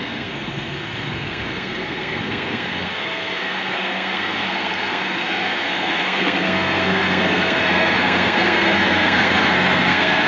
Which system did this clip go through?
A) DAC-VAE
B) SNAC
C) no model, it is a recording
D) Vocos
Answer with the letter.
B